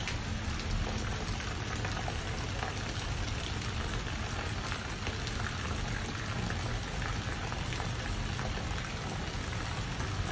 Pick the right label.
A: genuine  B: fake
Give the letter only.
A